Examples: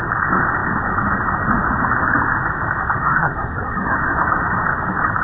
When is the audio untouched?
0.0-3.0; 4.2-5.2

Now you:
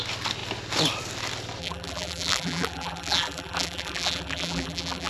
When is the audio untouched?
0.0-1.6

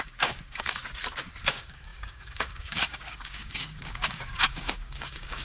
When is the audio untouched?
0.8-1.4

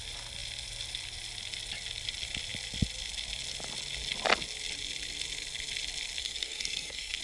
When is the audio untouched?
0.0-6.2

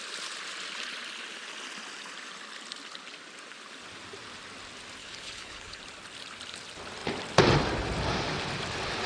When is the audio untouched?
0.0-5.0; 5.8-9.1

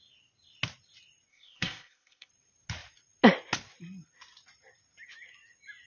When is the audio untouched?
0.0-1.3; 2.3-5.9

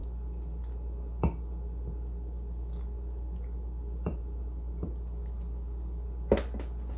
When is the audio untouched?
0.0-7.0

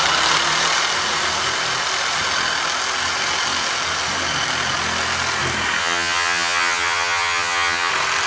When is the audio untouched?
0.0-5.8; 7.9-8.3